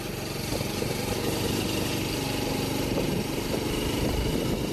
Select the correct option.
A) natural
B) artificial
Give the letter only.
A